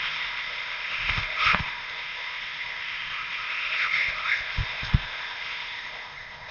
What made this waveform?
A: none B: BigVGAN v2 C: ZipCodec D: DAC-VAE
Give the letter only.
C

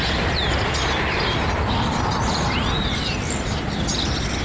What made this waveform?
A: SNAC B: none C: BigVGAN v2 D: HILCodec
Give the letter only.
B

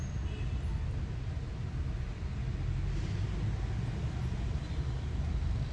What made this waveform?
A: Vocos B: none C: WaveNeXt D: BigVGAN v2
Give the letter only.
B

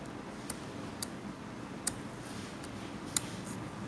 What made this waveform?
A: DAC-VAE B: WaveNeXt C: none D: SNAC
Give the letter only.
C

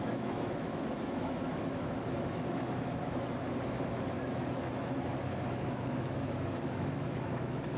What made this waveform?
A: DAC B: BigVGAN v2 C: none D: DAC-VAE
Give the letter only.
D